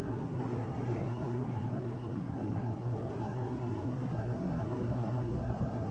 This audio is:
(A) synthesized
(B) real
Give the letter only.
A